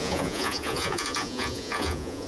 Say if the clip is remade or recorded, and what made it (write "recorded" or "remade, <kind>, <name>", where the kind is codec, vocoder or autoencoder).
remade, vocoder, Vocos